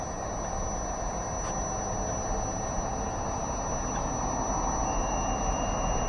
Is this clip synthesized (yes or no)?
no